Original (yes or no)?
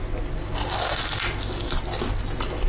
yes